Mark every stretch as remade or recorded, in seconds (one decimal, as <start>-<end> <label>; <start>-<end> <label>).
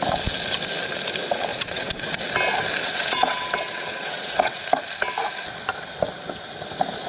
0.0-1.5 recorded; 1.5-2.2 remade; 2.2-2.8 recorded; 2.8-4.6 remade; 4.6-7.1 recorded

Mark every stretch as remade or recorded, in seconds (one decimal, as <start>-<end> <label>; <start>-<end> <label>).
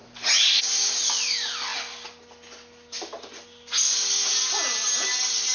0.0-5.5 recorded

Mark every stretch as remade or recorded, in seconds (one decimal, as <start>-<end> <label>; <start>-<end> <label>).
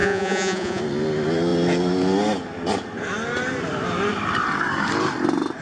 0.0-0.8 remade; 0.8-5.6 recorded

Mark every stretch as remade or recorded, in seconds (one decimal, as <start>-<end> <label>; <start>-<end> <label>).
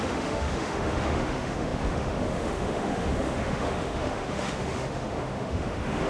0.0-6.1 remade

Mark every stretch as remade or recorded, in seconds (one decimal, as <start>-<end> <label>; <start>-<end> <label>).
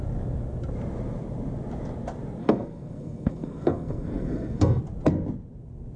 0.0-2.4 recorded; 2.4-4.8 remade; 4.8-6.0 recorded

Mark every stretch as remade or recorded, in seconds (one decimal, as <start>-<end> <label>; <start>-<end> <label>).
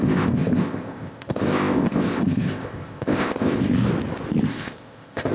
0.0-3.7 remade; 3.7-4.5 recorded; 4.5-5.3 remade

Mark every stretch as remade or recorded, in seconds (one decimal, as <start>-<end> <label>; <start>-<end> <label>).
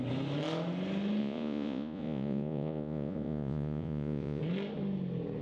0.0-1.2 recorded; 1.2-4.4 remade; 4.4-5.4 recorded